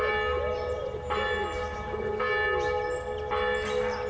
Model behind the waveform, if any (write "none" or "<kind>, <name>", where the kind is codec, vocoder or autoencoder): none